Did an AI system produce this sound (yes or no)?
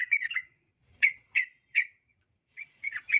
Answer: yes